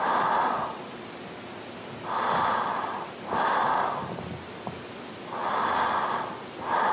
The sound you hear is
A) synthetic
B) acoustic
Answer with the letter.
B